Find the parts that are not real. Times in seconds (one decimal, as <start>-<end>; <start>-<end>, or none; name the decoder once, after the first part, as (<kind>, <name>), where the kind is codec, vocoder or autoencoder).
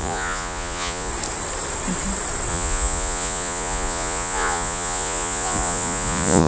0.0-1.1 (vocoder, Vocos); 2.5-6.5